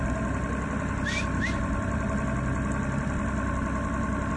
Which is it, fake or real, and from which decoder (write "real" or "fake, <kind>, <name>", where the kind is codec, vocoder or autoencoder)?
real